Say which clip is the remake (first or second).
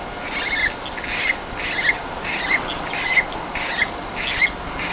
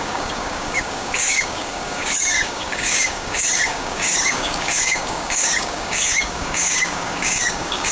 second